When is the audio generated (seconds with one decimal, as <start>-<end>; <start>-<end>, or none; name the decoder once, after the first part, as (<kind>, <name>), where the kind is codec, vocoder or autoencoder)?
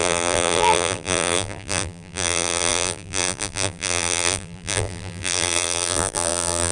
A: 0.0-6.7 (vocoder, BigVGAN v2)